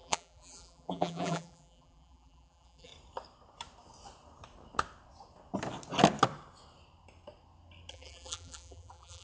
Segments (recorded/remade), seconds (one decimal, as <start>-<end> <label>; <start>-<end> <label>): 0.0-2.9 remade; 2.9-7.9 recorded; 7.9-9.2 remade